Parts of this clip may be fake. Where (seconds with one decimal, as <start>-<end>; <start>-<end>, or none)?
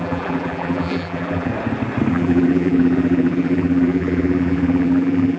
0.0-1.5; 2.1-5.4